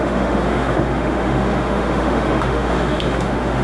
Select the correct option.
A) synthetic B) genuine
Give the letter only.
A